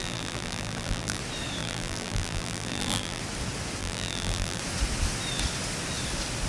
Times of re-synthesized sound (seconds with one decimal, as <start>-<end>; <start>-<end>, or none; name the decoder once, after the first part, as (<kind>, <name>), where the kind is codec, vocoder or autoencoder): 0.0-1.2 (vocoder, BigVGAN v2); 1.6-3.2; 3.8-4.6